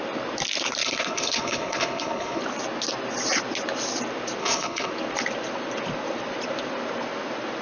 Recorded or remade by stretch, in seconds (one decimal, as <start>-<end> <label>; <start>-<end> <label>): 0.0-0.8 recorded; 0.8-2.4 remade; 2.4-4.4 recorded; 4.4-4.9 remade; 4.9-7.6 recorded